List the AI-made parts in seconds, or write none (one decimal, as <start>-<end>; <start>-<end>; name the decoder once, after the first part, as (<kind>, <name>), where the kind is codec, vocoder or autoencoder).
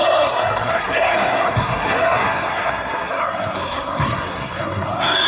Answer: 0.0-5.3 (codec, SNAC)